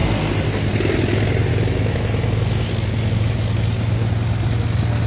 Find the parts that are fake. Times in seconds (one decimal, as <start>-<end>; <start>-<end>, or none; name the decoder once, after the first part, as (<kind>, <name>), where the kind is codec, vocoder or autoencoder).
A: 1.5-2.7 (autoencoder, DAC-VAE)